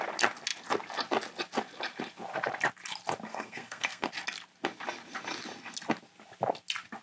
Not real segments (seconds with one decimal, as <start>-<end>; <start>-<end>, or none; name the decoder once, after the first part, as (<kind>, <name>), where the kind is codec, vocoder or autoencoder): 3.3-4.1 (codec, SNAC)